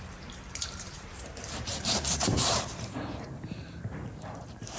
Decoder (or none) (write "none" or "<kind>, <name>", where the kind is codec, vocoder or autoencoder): vocoder, BigVGAN v2